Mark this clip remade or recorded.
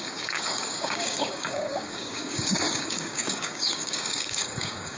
remade